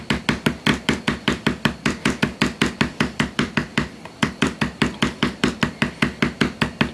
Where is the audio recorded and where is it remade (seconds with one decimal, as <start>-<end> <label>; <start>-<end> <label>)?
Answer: 0.0-0.7 recorded; 0.7-2.2 remade; 2.2-2.9 recorded; 2.9-5.7 remade; 5.7-6.9 recorded